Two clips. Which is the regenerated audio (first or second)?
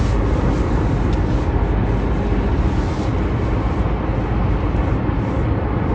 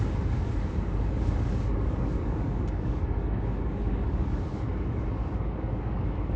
second